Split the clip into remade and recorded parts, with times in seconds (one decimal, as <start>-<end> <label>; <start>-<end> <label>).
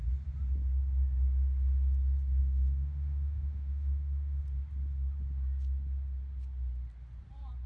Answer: 0.0-2.4 recorded; 2.4-4.4 remade; 4.4-7.7 recorded